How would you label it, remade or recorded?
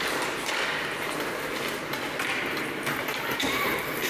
recorded